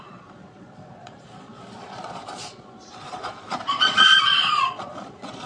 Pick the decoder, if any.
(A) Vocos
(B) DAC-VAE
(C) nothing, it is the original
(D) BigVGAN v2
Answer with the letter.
A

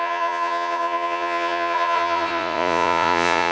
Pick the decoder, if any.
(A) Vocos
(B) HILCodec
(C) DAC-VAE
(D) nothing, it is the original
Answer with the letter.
A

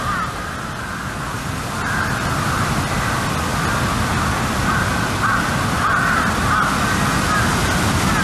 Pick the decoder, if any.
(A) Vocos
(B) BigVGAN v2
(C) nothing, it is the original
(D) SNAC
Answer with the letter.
C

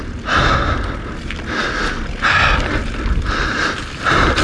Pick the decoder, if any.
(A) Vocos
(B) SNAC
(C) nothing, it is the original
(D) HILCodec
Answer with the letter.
C